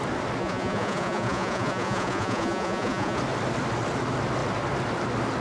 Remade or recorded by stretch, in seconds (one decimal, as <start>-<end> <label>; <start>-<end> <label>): 0.0-0.4 recorded; 0.4-3.2 remade; 3.2-5.4 recorded

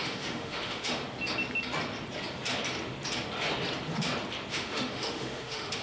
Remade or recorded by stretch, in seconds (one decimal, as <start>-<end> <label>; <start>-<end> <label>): 0.0-1.0 remade; 1.0-4.5 recorded; 4.5-5.8 remade